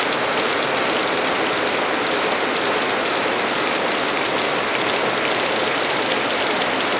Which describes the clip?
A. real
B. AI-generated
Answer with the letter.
A